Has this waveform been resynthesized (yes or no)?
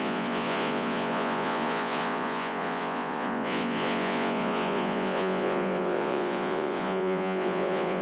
yes